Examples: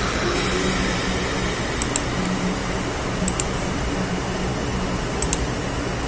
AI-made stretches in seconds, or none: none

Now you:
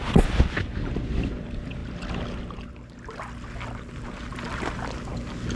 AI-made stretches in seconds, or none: none